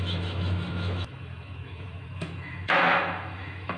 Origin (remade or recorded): remade